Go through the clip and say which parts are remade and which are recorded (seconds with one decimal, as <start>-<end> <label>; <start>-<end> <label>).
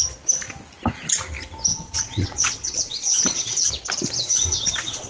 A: 0.0-1.7 recorded; 1.7-3.7 remade; 3.7-4.3 recorded; 4.3-5.1 remade